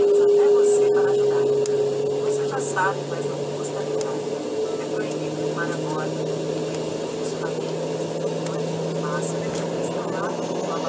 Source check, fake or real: real